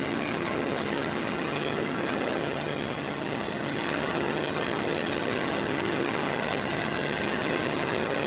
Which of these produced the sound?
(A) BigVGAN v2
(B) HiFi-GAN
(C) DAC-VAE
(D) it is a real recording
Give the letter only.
B